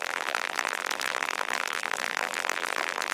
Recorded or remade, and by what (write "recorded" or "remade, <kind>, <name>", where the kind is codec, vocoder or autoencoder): remade, vocoder, BigVGAN v2